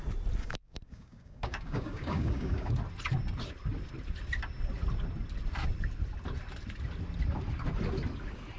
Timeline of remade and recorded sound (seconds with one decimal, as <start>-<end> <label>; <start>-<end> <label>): 0.0-0.4 recorded; 0.4-2.7 remade; 2.7-8.6 recorded